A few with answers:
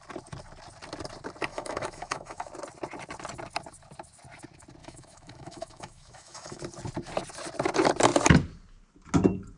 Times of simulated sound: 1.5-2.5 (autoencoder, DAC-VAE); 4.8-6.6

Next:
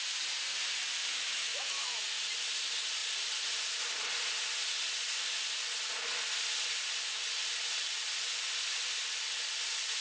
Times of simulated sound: 1.0-2.0 (autoencoder, DAC-VAE)